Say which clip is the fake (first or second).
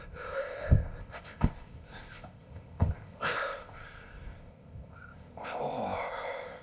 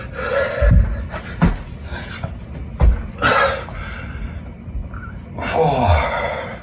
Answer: first